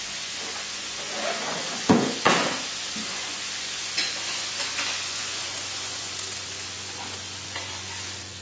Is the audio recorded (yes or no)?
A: no